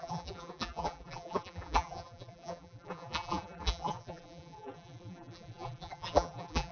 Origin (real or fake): fake